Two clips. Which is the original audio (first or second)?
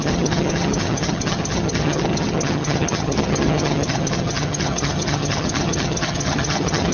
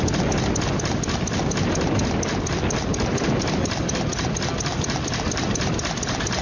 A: second